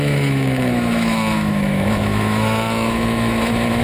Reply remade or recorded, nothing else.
remade